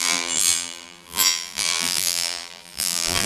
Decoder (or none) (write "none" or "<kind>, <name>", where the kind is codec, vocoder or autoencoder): vocoder, BigVGAN v2